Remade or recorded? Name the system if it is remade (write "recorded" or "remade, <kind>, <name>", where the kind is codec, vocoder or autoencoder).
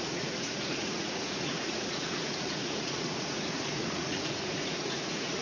remade, vocoder, Vocos